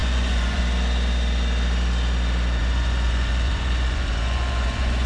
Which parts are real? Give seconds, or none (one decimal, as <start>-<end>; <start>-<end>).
0.6-2.6